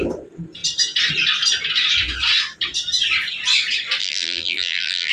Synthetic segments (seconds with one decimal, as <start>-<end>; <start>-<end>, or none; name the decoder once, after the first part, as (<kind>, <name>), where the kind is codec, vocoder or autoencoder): 4.0-5.1 (vocoder, BigVGAN v2)